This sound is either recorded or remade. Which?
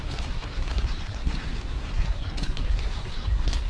remade